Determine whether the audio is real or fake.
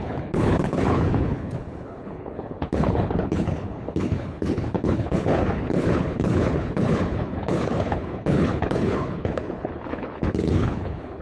fake